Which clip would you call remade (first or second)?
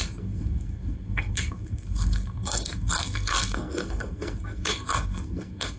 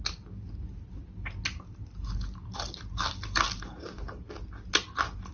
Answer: first